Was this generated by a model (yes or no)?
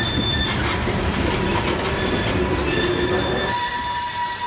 no